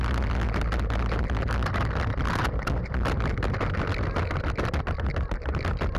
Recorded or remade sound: recorded